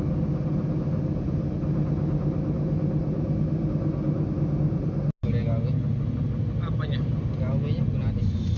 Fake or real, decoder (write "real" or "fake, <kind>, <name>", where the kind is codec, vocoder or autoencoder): real